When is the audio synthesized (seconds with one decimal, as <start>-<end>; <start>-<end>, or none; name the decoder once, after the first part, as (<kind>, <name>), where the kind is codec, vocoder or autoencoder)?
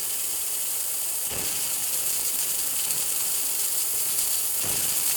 0.0-5.2 (vocoder, BigVGAN v2)